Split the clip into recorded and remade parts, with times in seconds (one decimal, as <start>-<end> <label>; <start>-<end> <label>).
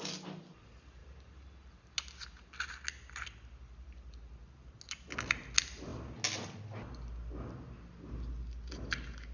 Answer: 0.0-9.3 recorded